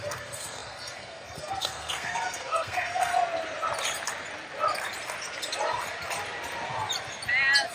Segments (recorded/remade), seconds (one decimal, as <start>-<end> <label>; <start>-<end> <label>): 0.0-3.1 remade; 3.1-7.7 recorded